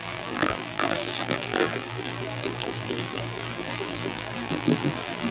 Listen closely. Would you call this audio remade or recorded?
remade